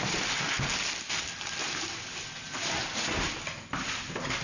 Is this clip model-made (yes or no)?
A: no